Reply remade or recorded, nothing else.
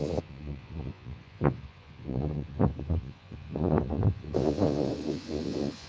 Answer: remade